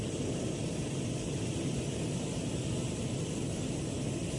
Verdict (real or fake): real